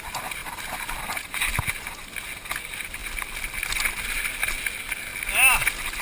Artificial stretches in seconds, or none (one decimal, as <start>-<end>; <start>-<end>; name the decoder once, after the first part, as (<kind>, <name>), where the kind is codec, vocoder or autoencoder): none